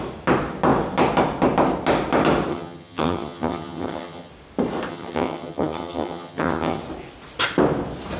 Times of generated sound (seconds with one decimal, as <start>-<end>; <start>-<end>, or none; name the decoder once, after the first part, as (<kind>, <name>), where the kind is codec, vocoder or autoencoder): 2.5-4.3 (vocoder, HiFi-GAN); 4.9-6.8